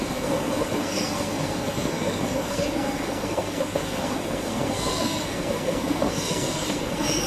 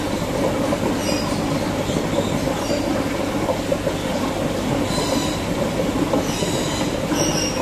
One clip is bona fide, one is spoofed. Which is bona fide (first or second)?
second